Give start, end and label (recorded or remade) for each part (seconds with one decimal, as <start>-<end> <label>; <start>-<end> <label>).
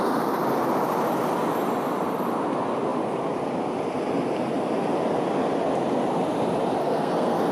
0.0-6.8 recorded; 6.8-7.5 remade